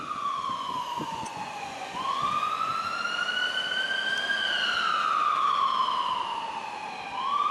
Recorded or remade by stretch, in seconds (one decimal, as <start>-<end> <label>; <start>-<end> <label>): 0.0-2.7 remade; 2.7-7.5 recorded